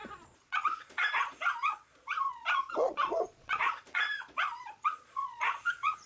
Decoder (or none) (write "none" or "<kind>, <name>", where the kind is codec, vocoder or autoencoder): vocoder, Vocos